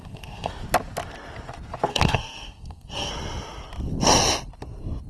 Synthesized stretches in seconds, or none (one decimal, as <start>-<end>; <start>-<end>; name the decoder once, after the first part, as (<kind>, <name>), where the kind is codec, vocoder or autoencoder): 0.0-0.5 (codec, SNAC); 1.9-3.1